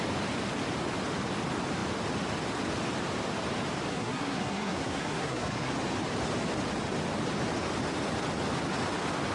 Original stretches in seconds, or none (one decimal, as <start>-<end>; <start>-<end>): 0.0-3.9; 5.7-9.3